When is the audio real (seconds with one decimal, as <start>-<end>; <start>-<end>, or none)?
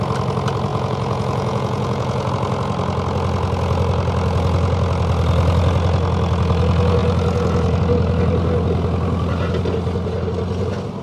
0.0-0.7; 2.3-11.0